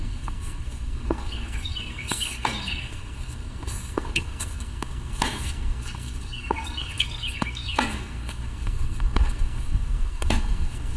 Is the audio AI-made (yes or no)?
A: yes